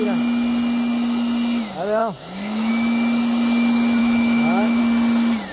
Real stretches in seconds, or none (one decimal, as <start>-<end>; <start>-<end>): 0.0-2.0; 2.7-4.0; 4.8-5.5